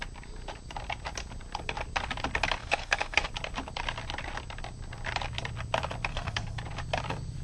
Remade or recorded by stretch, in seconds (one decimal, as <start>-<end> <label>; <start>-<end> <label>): 0.0-2.6 recorded; 2.6-3.3 remade; 3.3-6.1 recorded; 6.1-6.6 remade; 6.6-7.4 recorded